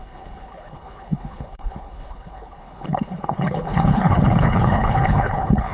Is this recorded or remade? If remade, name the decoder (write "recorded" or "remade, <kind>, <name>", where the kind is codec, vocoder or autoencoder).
remade, codec, HILCodec